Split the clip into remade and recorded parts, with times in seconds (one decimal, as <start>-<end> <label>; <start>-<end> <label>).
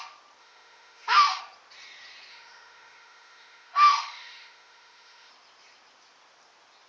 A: 0.0-0.4 recorded; 0.4-1.4 remade; 1.4-2.3 recorded; 2.3-5.3 remade; 5.3-6.9 recorded